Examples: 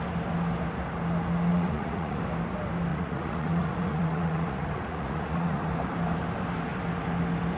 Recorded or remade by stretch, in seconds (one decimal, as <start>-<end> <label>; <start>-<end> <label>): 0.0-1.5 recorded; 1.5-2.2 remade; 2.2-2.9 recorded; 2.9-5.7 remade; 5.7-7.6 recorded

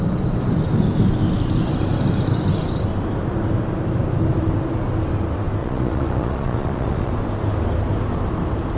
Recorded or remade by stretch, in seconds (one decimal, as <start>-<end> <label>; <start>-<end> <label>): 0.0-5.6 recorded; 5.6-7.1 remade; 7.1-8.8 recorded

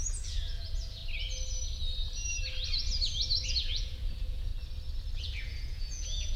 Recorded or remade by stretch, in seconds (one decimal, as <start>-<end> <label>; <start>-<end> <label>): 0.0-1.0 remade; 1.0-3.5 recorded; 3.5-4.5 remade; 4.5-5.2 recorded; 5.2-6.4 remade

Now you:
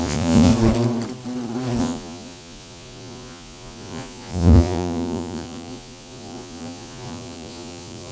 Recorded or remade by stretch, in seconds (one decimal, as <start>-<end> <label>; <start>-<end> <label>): 0.0-0.5 remade; 0.5-1.8 recorded; 1.8-8.1 remade

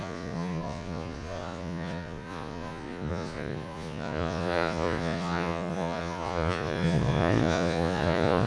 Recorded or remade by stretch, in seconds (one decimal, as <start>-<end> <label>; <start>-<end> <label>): 0.0-8.5 remade

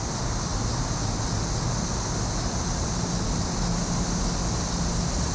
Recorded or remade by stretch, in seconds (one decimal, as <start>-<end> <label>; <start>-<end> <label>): 0.0-5.3 recorded